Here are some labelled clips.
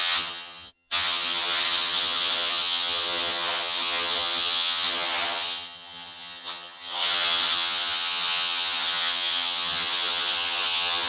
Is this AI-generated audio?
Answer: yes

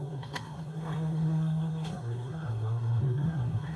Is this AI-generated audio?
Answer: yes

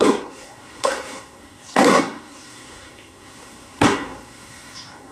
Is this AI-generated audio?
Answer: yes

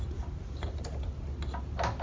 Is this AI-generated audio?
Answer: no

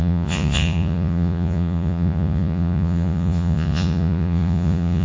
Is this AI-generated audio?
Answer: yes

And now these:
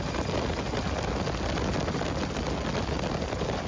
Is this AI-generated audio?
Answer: no